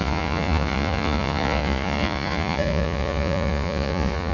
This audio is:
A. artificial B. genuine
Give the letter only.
A